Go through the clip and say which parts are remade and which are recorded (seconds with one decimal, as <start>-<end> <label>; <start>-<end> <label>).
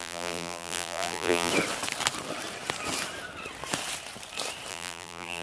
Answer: 0.0-1.5 remade; 1.5-4.7 recorded; 4.7-5.4 remade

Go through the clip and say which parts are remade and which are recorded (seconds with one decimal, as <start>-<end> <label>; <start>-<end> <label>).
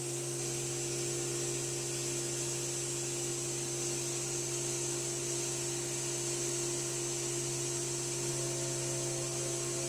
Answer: 0.0-9.9 recorded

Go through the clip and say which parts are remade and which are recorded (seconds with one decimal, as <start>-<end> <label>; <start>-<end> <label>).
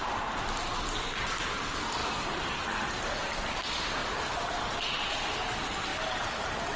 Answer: 0.0-2.0 recorded; 2.0-3.5 remade; 3.5-5.9 recorded; 5.9-6.8 remade